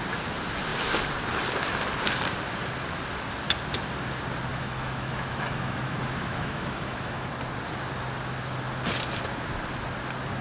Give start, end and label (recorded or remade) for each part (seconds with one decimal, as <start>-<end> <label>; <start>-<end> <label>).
0.0-4.5 recorded; 4.5-7.3 remade; 7.3-10.4 recorded